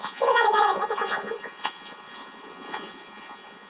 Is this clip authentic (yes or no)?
no